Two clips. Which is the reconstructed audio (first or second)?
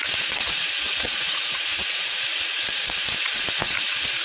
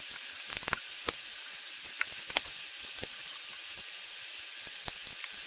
first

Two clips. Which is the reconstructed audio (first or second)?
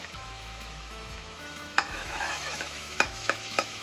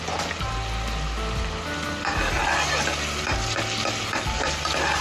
first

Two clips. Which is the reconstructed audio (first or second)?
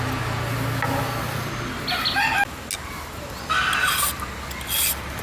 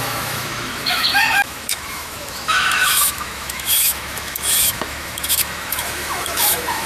second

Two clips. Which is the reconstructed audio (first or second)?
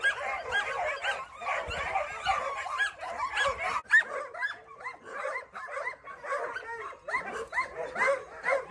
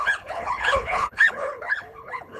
second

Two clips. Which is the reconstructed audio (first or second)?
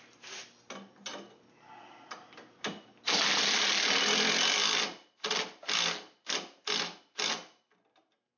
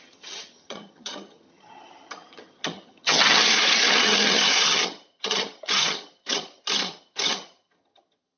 second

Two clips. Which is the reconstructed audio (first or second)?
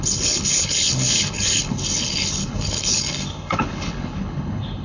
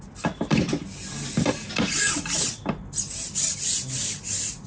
first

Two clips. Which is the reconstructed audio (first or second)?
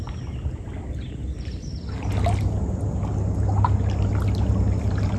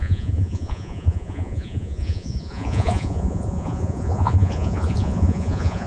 second